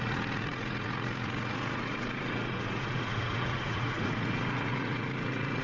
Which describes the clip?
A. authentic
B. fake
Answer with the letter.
B